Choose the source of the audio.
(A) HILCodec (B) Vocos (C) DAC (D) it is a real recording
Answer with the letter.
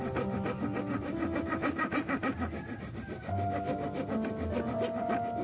D